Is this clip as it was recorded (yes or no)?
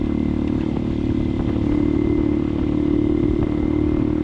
yes